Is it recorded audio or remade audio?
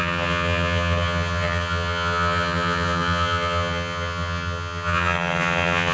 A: remade